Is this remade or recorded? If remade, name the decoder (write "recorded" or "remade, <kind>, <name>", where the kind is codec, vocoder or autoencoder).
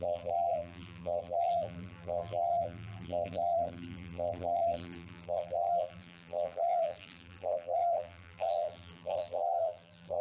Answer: remade, vocoder, BigVGAN v2